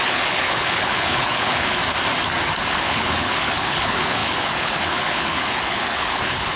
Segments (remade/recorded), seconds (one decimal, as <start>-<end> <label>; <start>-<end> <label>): 0.0-1.8 remade; 1.8-2.6 recorded; 2.6-6.6 remade